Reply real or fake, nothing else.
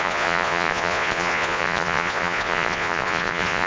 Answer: fake